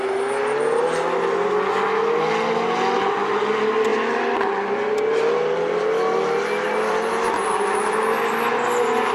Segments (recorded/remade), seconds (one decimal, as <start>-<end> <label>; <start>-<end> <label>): 0.0-9.1 recorded